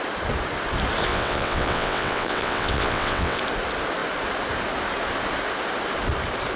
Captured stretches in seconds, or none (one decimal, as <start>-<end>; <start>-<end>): 0.0-1.1; 3.4-6.6